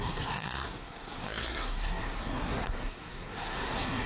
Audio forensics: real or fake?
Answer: fake